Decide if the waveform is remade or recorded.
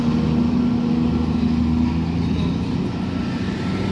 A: recorded